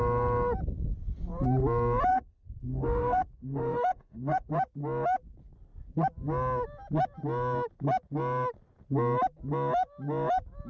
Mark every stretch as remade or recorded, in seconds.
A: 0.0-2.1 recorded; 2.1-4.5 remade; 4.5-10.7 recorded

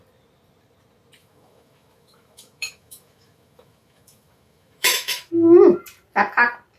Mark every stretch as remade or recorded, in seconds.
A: 0.0-1.2 recorded; 1.2-5.3 remade; 5.3-6.8 recorded

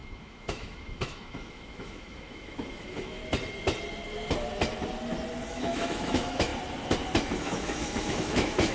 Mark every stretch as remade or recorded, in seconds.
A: 0.0-3.2 remade; 3.2-5.5 recorded; 5.5-6.5 remade; 6.5-7.4 recorded; 7.4-8.7 remade